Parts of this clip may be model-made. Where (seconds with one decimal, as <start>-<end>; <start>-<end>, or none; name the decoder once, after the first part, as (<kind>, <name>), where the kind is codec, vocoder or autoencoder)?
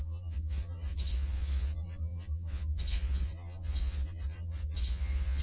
0.0-5.4 (vocoder, Vocos)